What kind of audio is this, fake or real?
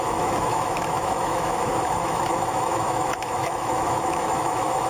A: fake